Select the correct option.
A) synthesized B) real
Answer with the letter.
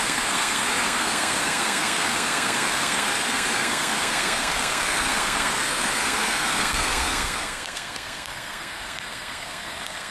A